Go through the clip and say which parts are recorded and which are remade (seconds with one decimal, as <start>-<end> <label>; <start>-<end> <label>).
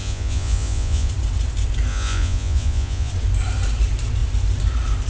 0.0-1.1 remade; 1.1-1.9 recorded; 1.9-3.1 remade; 3.1-5.1 recorded